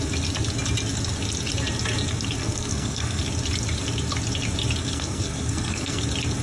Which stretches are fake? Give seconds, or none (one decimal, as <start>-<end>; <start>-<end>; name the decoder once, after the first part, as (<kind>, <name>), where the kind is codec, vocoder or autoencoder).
2.4-3.2 (codec, SNAC); 4.8-6.0

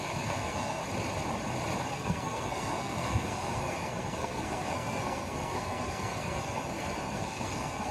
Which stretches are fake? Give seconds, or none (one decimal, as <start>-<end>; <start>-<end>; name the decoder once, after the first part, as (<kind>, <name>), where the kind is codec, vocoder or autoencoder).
0.0-0.8 (codec, SNAC); 1.9-7.9